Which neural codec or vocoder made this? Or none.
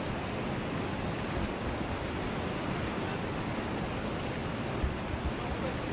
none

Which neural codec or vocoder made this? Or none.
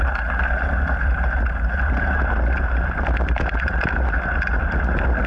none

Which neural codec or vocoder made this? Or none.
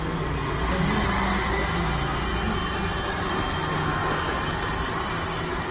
none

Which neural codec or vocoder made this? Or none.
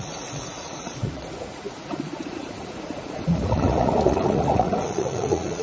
vocoder, Vocos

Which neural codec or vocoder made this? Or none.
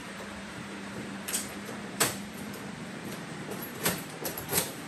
vocoder, BigVGAN v2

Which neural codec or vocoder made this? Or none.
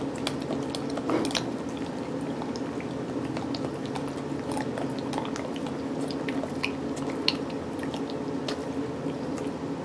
none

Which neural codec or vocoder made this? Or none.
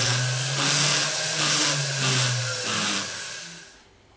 none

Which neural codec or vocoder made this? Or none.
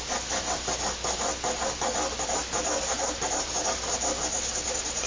none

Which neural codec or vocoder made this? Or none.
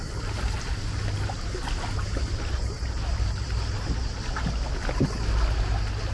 none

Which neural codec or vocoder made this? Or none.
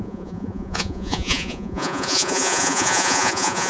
vocoder, Vocos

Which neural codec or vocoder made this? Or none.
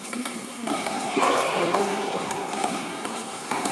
codec, SNAC